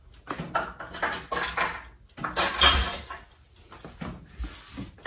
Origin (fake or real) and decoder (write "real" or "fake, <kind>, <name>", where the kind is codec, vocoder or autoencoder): real